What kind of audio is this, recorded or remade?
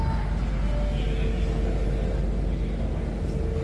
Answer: recorded